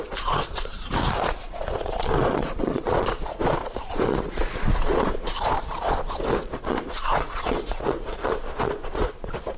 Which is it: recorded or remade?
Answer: remade